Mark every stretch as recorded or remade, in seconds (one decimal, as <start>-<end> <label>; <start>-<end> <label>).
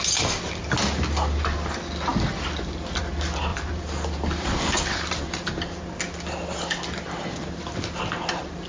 0.0-2.1 recorded; 2.1-3.0 remade; 3.0-3.5 recorded; 3.5-5.2 remade; 5.2-8.7 recorded